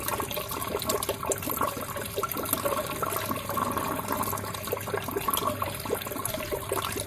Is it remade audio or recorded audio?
recorded